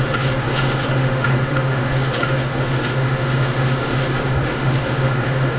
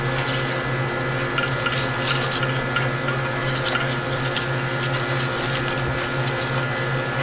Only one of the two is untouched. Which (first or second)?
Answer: second